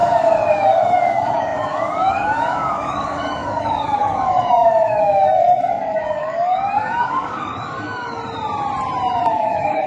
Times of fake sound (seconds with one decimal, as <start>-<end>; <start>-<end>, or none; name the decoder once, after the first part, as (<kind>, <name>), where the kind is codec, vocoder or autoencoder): 0.0-8.2 (codec, DAC); 9.3-9.9